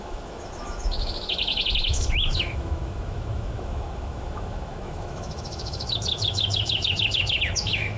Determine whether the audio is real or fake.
fake